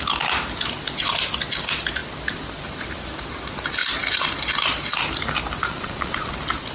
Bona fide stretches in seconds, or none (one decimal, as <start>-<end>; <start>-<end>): 0.0-5.6; 6.3-6.7